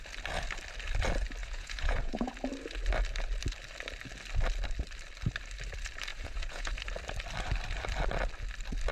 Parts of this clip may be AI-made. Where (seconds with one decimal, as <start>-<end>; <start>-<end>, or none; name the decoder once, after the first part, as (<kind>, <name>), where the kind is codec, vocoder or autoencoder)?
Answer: 1.4-2.3 (vocoder, Vocos); 6.1-6.7